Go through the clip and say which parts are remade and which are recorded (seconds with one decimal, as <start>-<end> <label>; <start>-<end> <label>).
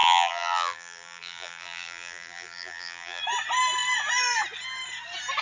0.0-3.2 remade; 3.2-5.4 recorded